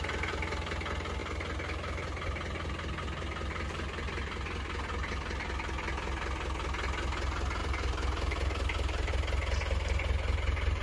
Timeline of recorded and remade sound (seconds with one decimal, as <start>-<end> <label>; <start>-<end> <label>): 0.0-7.6 recorded; 7.6-9.1 remade; 9.1-10.8 recorded